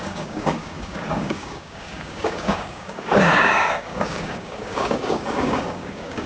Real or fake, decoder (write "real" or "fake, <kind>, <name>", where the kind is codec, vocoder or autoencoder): fake, codec, DAC